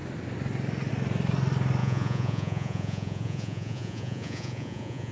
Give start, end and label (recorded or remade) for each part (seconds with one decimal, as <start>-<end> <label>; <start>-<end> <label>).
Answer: 0.0-1.8 recorded; 1.8-5.1 remade